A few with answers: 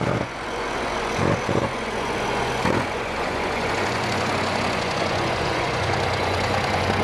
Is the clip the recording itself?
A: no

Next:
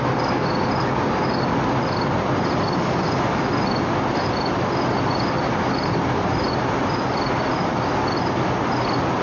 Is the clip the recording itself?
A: yes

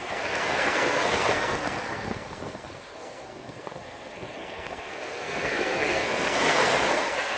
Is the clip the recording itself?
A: no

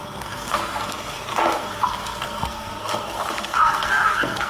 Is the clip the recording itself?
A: no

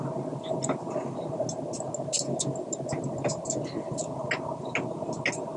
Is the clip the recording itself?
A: yes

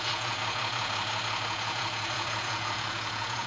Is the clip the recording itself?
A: no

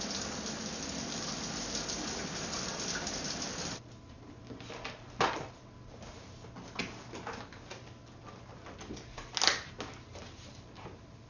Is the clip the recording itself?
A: yes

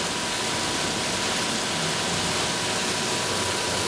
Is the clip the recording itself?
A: yes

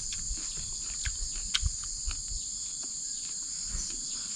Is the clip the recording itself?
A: yes